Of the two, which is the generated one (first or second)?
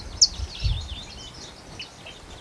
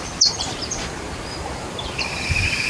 second